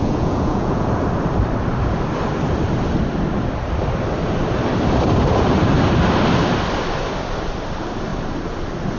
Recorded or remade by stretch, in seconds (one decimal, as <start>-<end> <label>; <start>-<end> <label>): 0.0-0.9 remade; 0.9-9.0 recorded